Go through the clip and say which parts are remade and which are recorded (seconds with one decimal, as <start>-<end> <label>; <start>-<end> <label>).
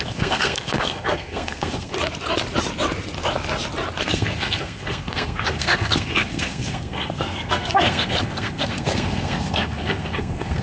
0.0-1.9 remade; 1.9-4.0 recorded; 4.0-10.6 remade